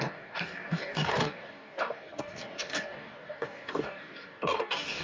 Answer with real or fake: fake